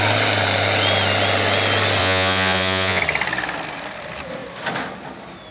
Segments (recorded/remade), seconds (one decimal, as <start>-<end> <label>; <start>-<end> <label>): 0.0-2.0 recorded; 2.0-3.0 remade; 3.0-5.5 recorded